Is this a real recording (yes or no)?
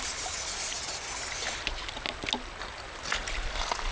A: yes